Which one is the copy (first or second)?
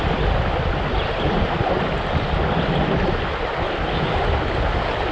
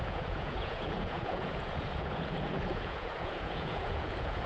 second